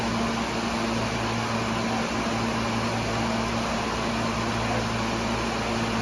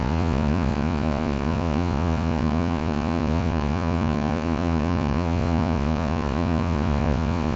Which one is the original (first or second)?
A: first